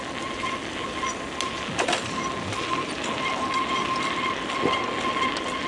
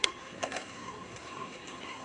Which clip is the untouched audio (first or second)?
first